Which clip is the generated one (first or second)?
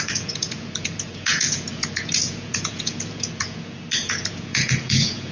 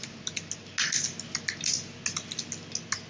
first